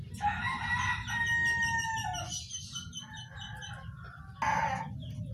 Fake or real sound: real